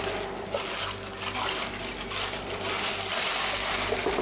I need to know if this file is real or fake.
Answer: real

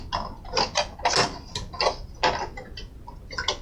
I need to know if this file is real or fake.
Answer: real